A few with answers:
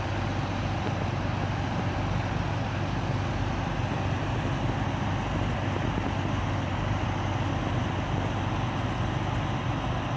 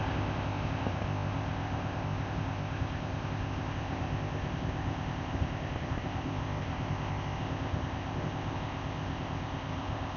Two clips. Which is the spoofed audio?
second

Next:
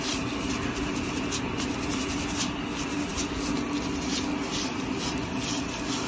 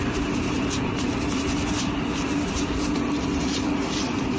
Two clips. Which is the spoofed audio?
second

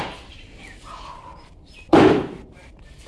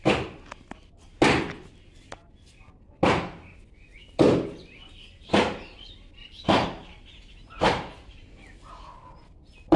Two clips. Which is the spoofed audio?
first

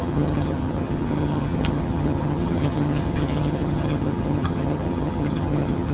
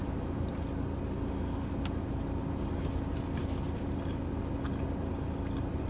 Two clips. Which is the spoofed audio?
first